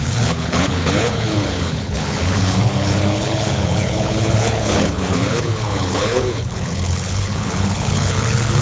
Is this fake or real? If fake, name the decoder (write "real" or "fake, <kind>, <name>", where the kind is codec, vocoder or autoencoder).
fake, codec, HILCodec